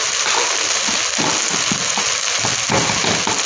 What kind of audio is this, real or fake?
real